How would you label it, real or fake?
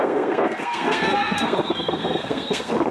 fake